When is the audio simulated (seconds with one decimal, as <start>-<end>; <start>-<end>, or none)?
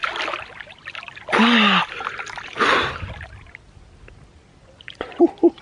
4.6-5.6